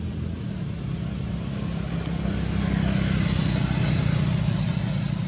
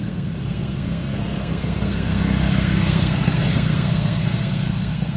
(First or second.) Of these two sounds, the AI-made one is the second